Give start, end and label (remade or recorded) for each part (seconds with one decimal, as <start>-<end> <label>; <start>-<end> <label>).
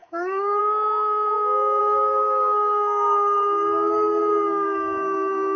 0.0-0.6 remade; 0.6-1.8 recorded; 1.8-5.6 remade